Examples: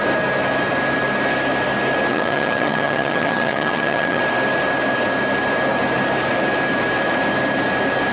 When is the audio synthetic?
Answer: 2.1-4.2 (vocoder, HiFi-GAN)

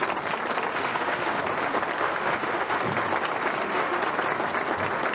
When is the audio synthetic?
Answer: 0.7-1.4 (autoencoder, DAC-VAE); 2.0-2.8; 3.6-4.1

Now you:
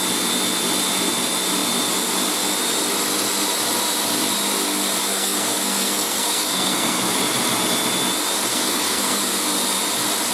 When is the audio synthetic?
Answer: 5.0-7.0 (codec, SNAC); 8.5-9.2

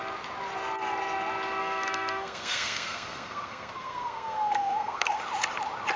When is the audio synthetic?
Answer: 1.6-5.2 (codec, SNAC)

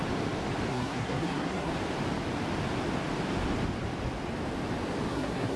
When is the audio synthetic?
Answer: 0.7-1.7 (codec, SNAC); 5.1-5.6

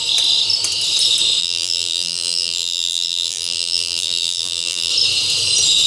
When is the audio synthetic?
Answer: 1.4-4.9 (vocoder, BigVGAN v2)

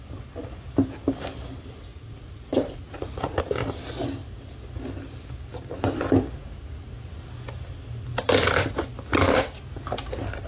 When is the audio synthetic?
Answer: 1.9-3.4 (vocoder, Vocos)

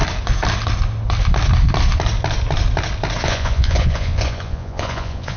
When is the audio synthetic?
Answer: 3.2-5.4 (vocoder, Vocos)